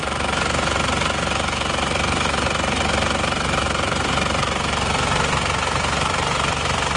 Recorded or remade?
remade